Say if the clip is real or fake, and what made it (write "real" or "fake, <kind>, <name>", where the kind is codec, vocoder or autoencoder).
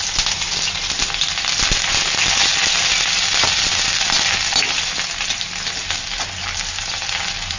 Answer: real